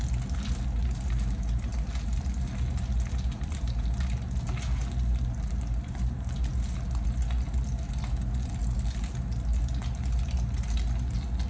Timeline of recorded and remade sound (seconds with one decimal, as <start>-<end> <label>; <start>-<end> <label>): 0.0-11.5 recorded